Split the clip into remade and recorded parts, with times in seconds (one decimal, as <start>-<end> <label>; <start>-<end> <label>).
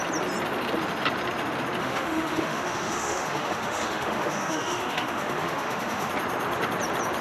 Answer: 0.0-1.8 recorded; 1.8-6.1 remade; 6.1-7.2 recorded